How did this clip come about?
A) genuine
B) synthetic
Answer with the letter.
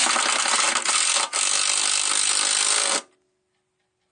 A